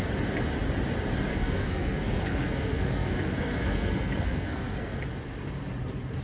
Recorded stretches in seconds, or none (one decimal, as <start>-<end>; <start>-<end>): 0.0-1.3; 5.0-6.2